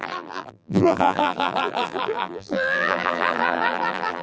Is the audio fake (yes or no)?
yes